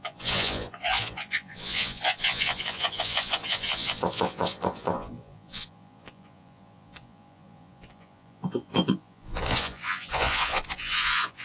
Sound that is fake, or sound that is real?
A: fake